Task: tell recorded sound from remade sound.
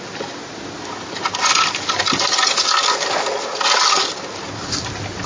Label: recorded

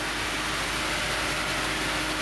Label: recorded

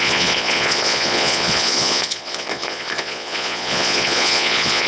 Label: remade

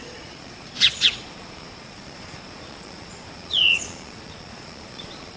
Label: remade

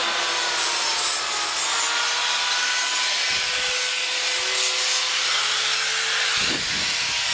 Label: recorded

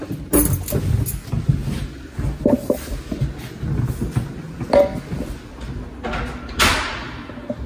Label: recorded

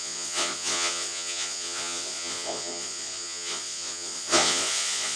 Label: remade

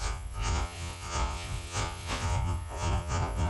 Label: remade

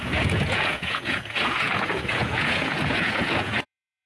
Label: remade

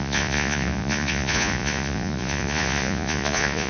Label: remade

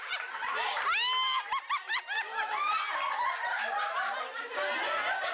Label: recorded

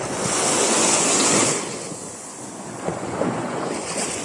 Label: remade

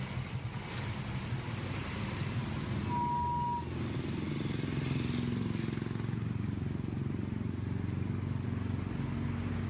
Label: recorded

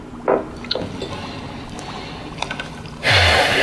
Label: recorded